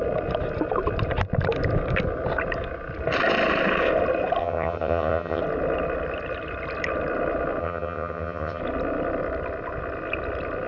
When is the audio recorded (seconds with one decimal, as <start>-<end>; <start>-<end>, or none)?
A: 0.0-4.4; 5.4-7.6; 8.6-10.7